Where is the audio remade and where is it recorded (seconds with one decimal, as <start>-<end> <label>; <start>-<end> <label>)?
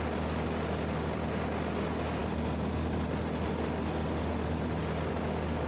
0.0-5.7 recorded